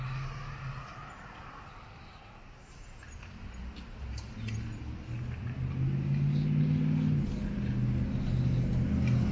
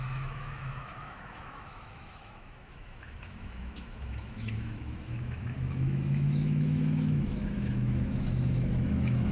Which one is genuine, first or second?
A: first